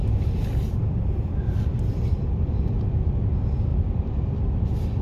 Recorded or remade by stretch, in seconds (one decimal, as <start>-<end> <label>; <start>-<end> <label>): 0.0-3.0 remade; 3.0-5.0 recorded